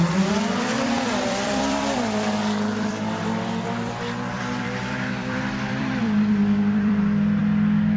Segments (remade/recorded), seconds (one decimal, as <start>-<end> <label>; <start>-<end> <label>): 0.0-7.4 remade; 7.4-8.0 recorded